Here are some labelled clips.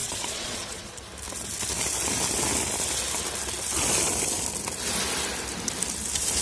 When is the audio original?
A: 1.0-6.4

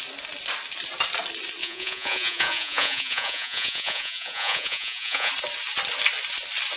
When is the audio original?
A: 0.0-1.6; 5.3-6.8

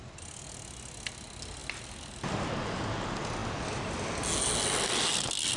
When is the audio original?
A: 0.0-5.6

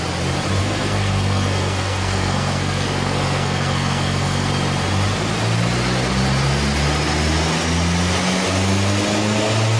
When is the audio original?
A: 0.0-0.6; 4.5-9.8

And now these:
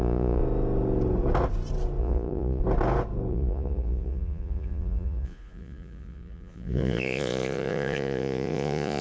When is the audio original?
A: 0.4-2.0; 2.6-3.3